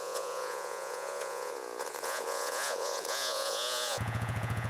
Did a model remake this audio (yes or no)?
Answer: yes